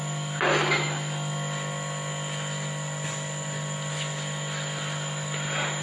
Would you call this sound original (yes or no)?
yes